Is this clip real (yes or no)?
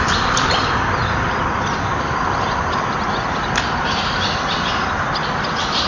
yes